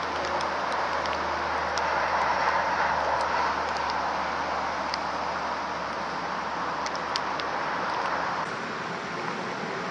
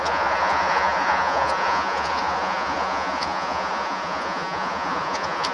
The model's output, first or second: second